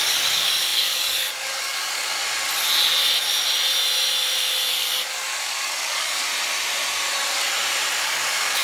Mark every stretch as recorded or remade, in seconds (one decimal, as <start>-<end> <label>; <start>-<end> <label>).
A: 0.0-2.2 remade; 2.2-4.7 recorded; 4.7-6.3 remade; 6.3-8.0 recorded; 8.0-8.6 remade